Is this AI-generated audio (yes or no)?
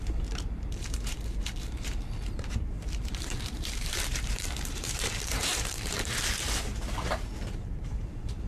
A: yes